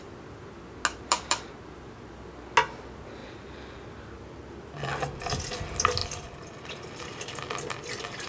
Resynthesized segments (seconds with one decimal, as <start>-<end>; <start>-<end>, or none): 0.9-1.5; 6.0-7.1